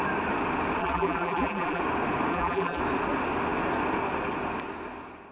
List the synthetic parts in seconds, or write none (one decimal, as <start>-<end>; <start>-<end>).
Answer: 0.8-1.8; 2.3-2.8